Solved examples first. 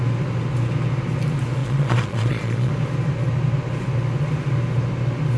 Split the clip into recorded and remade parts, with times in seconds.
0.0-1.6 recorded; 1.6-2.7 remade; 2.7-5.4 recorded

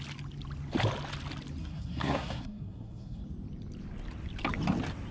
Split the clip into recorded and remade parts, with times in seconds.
0.0-1.6 recorded; 1.6-3.2 remade; 3.2-5.1 recorded